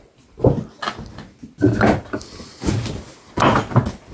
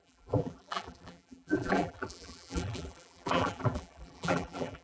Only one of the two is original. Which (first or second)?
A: first